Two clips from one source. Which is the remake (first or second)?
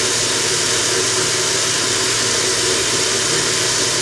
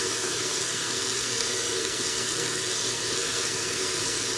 second